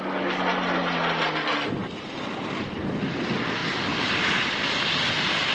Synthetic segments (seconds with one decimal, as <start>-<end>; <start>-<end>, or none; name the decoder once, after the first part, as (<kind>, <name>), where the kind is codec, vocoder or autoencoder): none